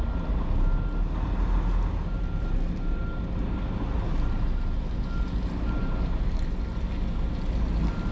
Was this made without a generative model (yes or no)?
yes